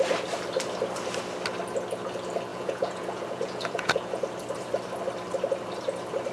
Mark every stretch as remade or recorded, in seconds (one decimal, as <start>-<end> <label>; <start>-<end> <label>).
0.0-2.5 recorded; 2.5-4.2 remade; 4.2-6.3 recorded